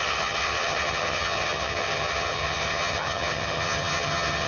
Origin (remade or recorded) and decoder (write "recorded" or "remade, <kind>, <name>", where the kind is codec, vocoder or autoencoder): remade, vocoder, HiFi-GAN